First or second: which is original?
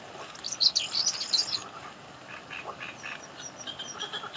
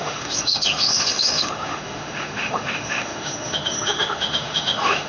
first